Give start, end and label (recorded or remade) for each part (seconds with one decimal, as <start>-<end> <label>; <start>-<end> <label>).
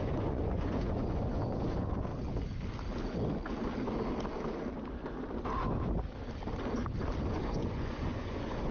0.0-2.1 remade; 2.1-7.3 recorded; 7.3-8.7 remade